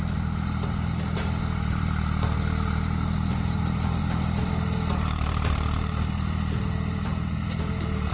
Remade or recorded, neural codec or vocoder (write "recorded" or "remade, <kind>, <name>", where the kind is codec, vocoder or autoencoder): remade, vocoder, BigVGAN v2